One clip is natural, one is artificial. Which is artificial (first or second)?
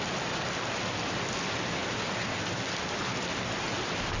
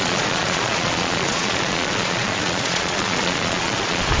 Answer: second